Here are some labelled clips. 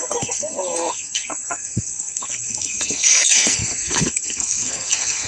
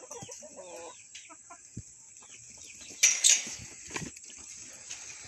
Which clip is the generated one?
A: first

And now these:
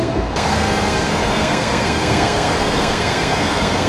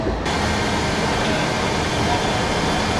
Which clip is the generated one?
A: first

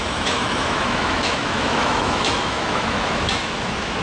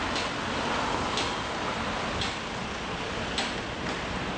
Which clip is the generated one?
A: first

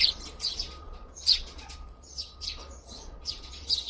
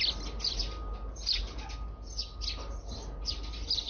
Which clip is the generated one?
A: first